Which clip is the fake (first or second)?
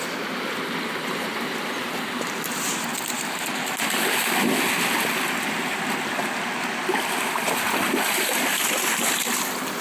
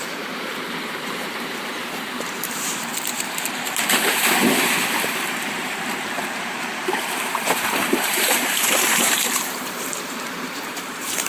second